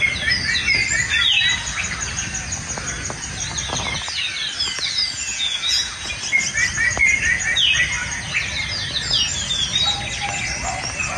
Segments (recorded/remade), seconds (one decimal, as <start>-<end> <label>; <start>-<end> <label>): 0.0-5.3 recorded; 5.3-6.1 remade; 6.1-11.2 recorded